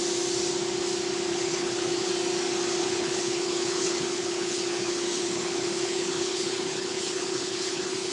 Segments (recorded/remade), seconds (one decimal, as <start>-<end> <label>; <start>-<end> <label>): 0.0-1.3 recorded; 1.3-2.1 remade; 2.1-2.8 recorded; 2.8-8.1 remade